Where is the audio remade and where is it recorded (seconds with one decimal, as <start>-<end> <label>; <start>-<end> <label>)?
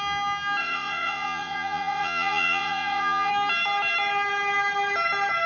0.0-0.6 recorded; 0.6-3.3 remade; 3.3-5.5 recorded